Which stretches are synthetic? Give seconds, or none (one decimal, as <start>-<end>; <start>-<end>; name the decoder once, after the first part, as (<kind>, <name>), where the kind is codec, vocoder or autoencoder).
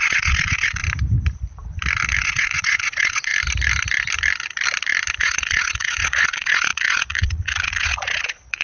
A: 0.0-0.8 (vocoder, Vocos); 2.2-3.3; 5.2-8.6